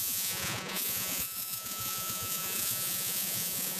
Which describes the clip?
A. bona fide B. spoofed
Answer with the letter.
B